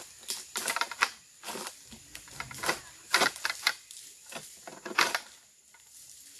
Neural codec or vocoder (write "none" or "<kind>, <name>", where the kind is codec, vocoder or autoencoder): none